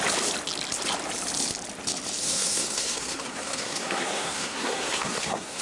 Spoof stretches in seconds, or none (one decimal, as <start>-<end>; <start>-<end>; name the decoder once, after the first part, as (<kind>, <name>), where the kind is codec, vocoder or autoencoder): 2.2-5.6 (codec, SNAC)